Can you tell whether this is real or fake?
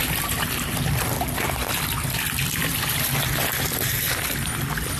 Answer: real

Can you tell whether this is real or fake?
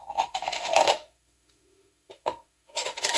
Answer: fake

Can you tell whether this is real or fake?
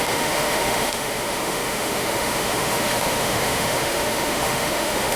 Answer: fake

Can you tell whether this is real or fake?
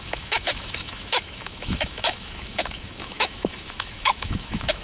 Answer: fake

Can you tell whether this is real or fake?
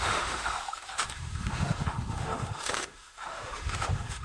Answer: fake